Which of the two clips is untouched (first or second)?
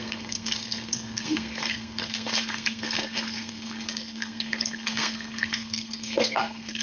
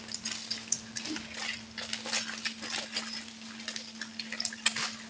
second